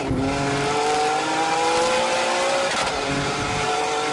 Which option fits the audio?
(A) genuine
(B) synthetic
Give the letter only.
A